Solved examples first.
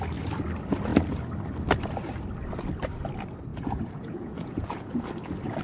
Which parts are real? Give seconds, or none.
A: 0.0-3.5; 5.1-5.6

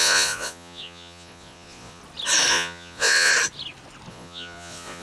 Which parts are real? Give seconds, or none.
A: 2.0-2.5; 3.3-4.1

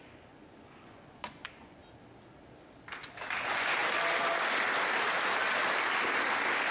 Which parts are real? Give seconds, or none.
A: 1.8-3.4; 3.8-6.7

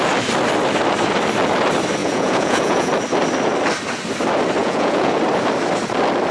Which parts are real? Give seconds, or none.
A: 0.0-2.0; 2.9-4.6; 5.2-6.3

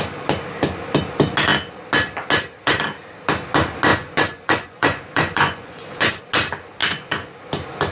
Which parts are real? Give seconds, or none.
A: 0.0-3.9; 6.2-6.8; 7.3-7.9